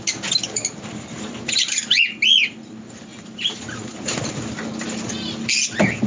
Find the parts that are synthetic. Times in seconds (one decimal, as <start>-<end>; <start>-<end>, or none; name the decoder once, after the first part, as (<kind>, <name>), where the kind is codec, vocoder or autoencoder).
0.6-1.9 (vocoder, BigVGAN v2); 3.1-4.2